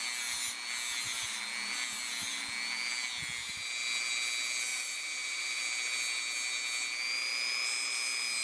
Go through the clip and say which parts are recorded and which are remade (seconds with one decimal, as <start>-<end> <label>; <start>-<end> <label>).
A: 0.0-4.7 recorded; 4.7-5.6 remade; 5.6-8.4 recorded

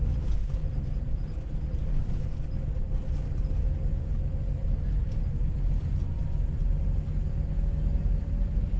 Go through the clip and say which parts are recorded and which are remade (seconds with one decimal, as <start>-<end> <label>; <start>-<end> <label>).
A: 0.0-0.4 recorded; 0.4-3.1 remade; 3.1-3.9 recorded; 3.9-6.6 remade; 6.6-8.8 recorded

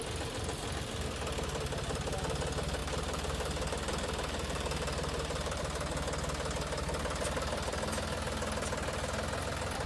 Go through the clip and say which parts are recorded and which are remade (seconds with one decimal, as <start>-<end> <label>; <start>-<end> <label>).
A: 0.0-2.8 recorded; 2.8-5.6 remade; 5.6-9.9 recorded